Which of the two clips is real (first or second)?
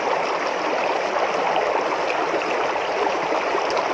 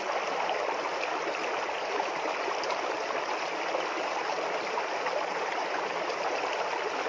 second